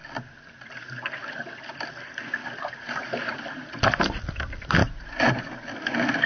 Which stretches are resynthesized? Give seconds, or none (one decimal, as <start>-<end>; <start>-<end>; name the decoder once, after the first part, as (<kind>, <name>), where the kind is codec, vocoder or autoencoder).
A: 2.4-4.2 (vocoder, BigVGAN v2); 4.8-5.5

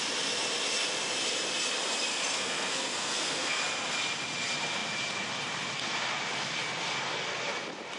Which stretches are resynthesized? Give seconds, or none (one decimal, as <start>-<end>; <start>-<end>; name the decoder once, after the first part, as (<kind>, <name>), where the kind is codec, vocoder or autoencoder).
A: 2.1-3.6 (codec, SNAC)

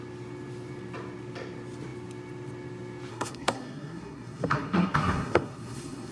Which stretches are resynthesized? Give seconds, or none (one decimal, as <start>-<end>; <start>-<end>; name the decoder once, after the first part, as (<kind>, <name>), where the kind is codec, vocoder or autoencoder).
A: 3.1-6.1 (codec, SNAC)

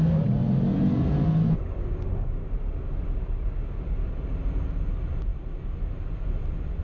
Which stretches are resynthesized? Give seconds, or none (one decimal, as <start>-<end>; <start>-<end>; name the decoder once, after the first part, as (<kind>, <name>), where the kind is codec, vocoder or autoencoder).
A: none